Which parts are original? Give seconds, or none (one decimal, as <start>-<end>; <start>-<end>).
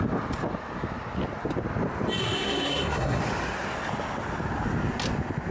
0.0-2.2; 3.2-5.5